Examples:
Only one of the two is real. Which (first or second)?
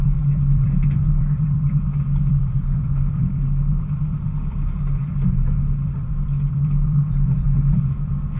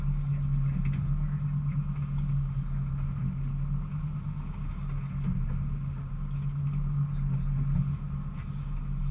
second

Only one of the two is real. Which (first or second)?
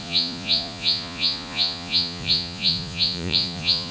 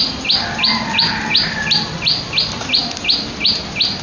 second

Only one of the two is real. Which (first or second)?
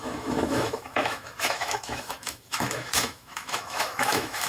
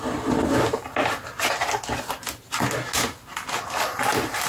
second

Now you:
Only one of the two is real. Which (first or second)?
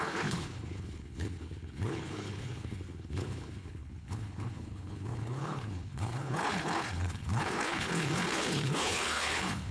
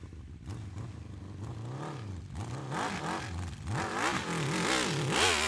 second